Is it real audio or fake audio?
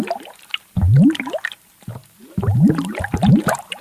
fake